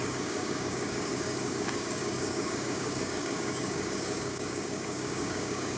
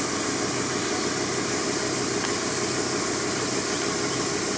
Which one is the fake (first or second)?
first